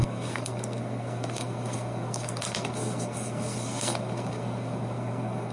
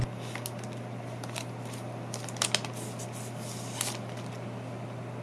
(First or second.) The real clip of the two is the second